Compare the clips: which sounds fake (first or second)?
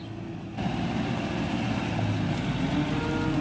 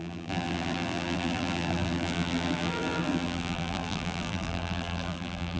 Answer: second